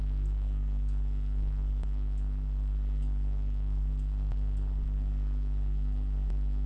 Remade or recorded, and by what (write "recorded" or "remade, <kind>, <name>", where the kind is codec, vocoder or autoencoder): remade, codec, SNAC